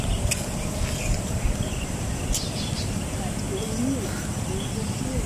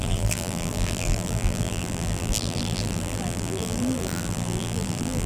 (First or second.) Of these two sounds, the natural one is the first